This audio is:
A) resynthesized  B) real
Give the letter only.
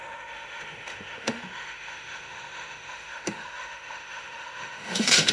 A